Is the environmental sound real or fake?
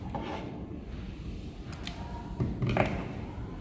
real